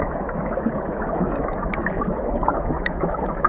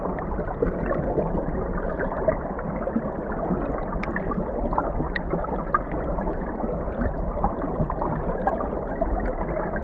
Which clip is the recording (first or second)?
second